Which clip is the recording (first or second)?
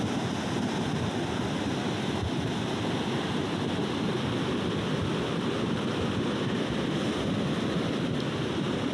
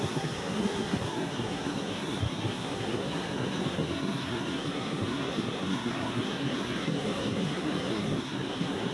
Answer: first